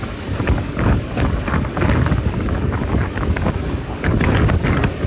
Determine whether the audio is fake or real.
fake